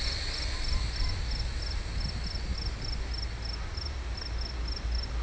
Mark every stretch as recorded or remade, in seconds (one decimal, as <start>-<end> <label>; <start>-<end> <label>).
0.0-5.2 recorded